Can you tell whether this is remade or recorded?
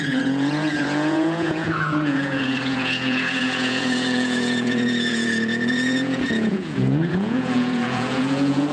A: remade